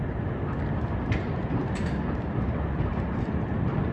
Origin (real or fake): real